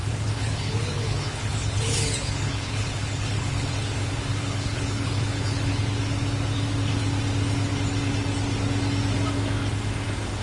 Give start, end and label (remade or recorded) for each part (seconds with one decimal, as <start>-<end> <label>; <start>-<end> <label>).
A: 0.0-3.7 remade; 3.7-4.4 recorded; 4.4-5.8 remade; 5.8-10.4 recorded